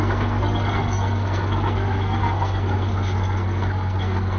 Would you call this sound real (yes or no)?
no